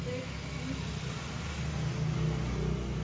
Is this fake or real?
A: real